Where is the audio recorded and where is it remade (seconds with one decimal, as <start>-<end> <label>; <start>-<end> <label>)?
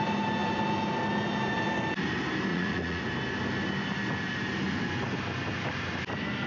0.0-2.5 recorded; 2.5-3.0 remade; 3.0-6.5 recorded